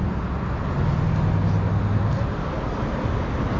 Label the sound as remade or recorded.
recorded